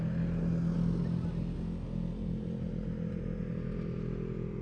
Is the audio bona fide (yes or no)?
yes